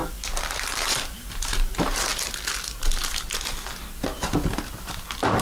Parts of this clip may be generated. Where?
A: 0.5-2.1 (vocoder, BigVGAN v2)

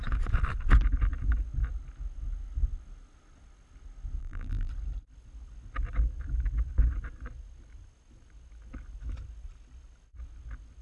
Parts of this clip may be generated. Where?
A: 4.2-4.7 (vocoder, BigVGAN v2)

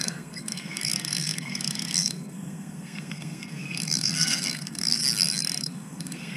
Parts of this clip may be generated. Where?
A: 0.0-5.0 (codec, SNAC); 5.6-6.4

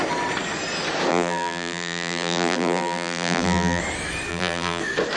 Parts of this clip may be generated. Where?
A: 1.1-3.8 (vocoder, BigVGAN v2); 4.3-4.8